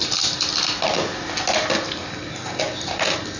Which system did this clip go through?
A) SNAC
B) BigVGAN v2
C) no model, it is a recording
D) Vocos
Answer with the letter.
C